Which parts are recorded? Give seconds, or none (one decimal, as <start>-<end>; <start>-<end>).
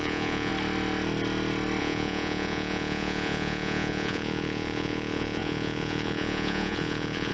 0.5-1.8